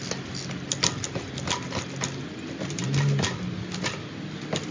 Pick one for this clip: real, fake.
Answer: real